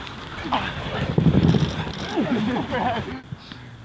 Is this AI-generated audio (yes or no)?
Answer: no